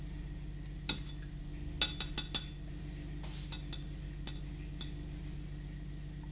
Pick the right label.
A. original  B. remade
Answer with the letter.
A